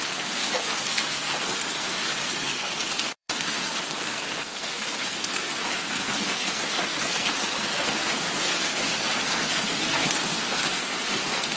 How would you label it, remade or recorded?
remade